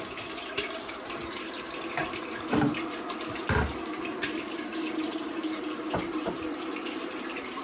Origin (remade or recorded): remade